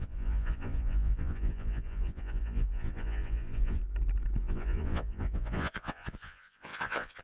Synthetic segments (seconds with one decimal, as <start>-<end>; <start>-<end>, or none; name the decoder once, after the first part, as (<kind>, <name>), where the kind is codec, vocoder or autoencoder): 0.0-3.8 (vocoder, Vocos); 4.4-7.2